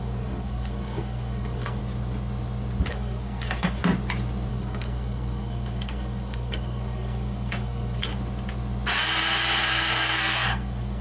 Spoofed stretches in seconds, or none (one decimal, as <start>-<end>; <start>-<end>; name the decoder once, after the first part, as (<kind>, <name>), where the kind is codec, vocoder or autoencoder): 0.0-1.8 (codec, SNAC); 2.9-3.8; 4.5-8.1; 9.7-11.0